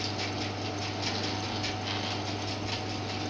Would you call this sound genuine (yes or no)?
yes